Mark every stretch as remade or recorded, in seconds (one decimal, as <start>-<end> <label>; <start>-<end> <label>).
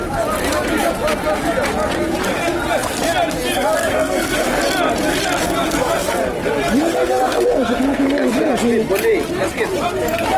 0.0-3.8 recorded; 3.8-4.6 remade; 4.6-6.8 recorded; 6.8-8.5 remade; 8.5-10.4 recorded